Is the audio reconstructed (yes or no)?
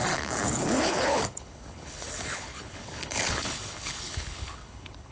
yes